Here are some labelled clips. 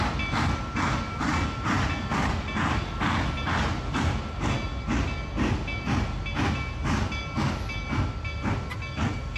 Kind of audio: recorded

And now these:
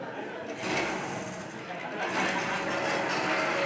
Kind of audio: recorded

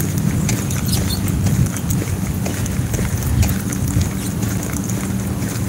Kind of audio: recorded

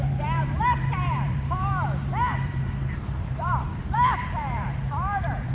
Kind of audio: remade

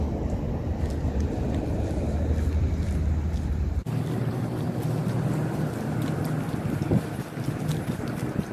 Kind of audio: recorded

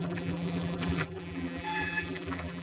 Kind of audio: remade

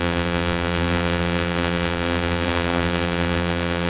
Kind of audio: remade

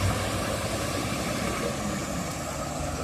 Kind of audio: remade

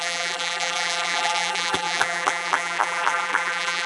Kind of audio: remade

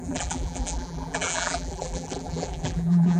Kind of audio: remade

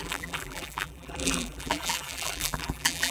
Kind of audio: remade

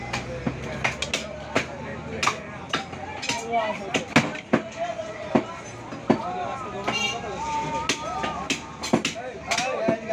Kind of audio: recorded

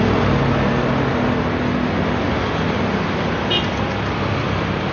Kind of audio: recorded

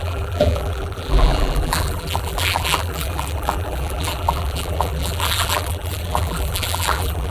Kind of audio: remade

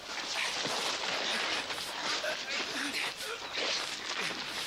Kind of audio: recorded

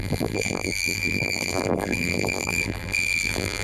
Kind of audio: remade